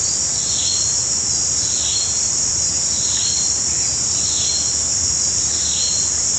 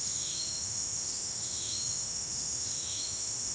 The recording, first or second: first